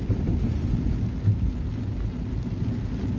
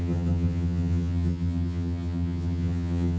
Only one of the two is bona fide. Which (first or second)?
first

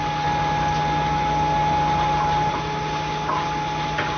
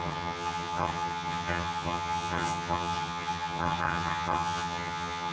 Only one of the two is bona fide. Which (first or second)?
first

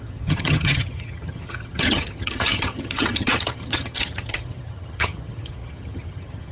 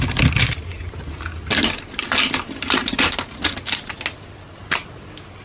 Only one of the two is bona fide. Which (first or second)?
second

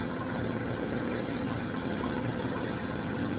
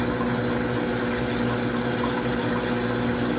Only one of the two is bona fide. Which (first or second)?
second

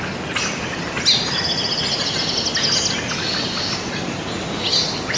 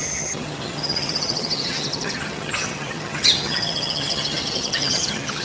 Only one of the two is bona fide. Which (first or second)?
first